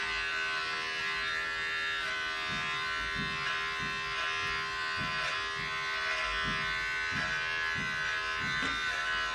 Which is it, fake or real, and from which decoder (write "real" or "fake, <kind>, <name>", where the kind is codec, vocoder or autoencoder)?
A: real